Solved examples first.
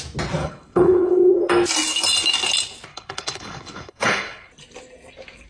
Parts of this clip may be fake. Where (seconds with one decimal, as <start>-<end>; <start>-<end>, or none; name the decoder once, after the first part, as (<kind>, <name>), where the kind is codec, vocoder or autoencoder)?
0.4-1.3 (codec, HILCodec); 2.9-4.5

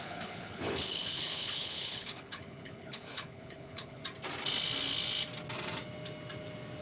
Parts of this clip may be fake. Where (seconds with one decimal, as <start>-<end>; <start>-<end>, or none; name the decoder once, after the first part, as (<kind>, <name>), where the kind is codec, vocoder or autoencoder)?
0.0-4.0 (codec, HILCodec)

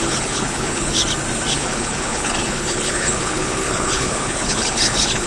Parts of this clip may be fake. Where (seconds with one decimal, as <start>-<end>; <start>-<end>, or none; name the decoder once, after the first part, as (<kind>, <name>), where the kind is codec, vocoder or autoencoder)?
0.0-1.0 (codec, HILCodec); 1.5-5.3